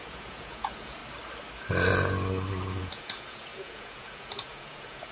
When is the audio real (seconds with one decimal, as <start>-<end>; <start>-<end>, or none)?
1.0-2.8

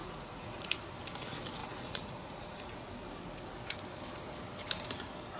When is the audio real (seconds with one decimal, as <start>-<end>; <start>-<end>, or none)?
0.7-1.6; 2.9-5.4

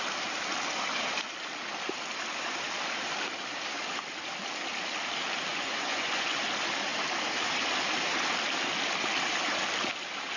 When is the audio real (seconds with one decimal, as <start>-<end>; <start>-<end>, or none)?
0.0-5.5; 6.4-10.4